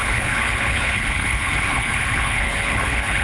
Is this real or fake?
fake